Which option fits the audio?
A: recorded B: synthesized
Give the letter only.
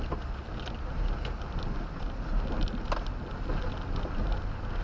A